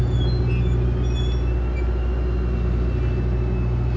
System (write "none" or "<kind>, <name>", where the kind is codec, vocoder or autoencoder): none